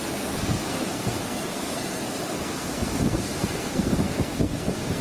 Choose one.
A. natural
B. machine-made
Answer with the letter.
B